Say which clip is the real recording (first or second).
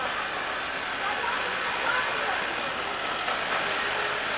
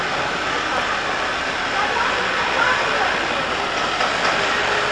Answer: first